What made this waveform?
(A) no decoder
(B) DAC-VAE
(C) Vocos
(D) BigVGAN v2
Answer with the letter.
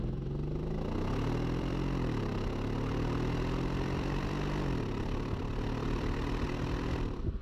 D